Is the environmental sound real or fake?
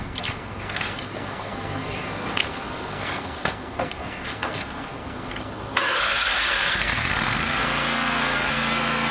fake